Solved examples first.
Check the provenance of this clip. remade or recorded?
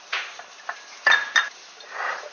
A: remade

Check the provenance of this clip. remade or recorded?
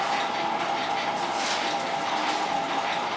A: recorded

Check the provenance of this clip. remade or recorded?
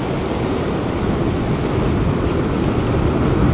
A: recorded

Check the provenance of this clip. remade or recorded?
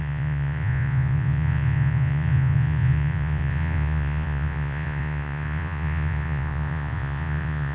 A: remade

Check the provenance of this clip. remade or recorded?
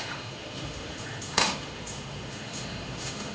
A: remade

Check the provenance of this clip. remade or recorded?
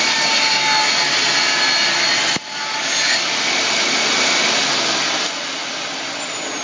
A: recorded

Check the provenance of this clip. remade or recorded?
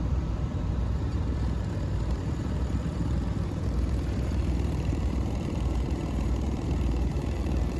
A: remade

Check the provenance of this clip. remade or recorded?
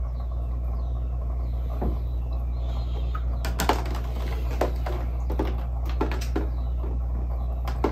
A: recorded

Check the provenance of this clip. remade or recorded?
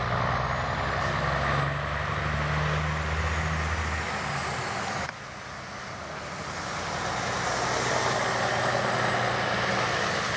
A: recorded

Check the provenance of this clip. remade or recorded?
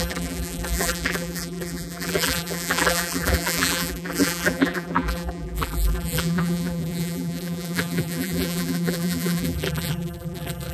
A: remade